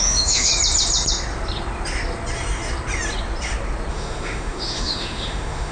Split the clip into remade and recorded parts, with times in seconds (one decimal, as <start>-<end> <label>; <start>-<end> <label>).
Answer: 0.0-0.5 remade; 0.5-3.9 recorded; 3.9-5.7 remade